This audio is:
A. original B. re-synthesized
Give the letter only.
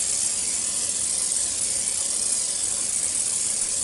A